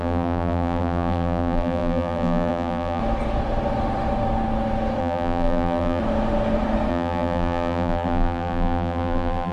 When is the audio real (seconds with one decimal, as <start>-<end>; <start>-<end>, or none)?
3.0-5.0; 6.0-6.9